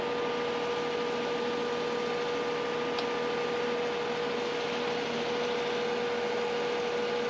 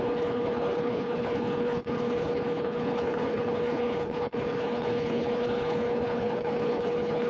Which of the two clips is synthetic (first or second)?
second